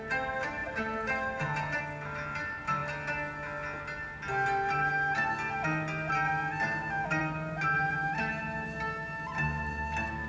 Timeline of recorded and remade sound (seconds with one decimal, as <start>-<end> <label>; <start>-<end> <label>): 0.0-0.6 recorded; 0.6-1.8 remade; 1.8-7.2 recorded; 7.2-8.2 remade; 8.2-10.3 recorded